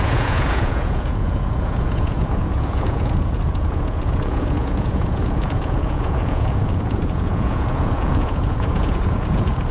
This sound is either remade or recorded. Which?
remade